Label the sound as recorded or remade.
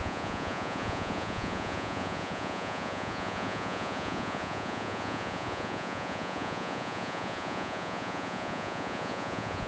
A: remade